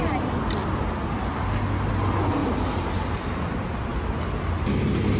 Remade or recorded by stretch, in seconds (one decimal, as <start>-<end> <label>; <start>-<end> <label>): 0.0-2.4 recorded; 2.4-3.5 remade; 3.5-5.2 recorded